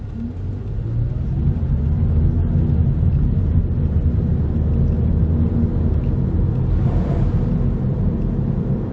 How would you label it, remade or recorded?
recorded